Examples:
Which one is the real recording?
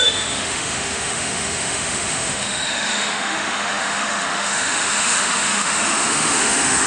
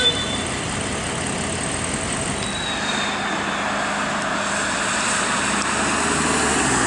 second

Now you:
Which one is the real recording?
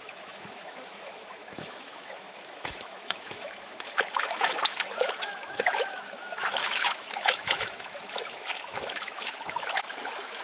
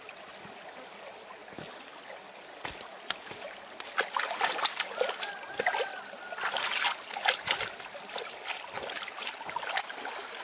second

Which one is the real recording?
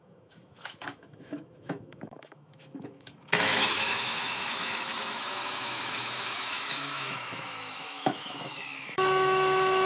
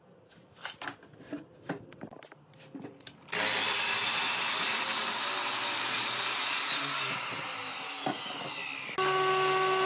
second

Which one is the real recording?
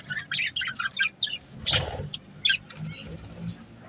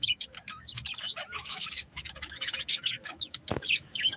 first